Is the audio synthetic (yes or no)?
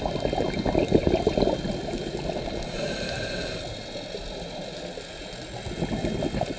no